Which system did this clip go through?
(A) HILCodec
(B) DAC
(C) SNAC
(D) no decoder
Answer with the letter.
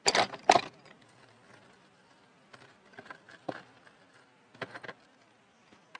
D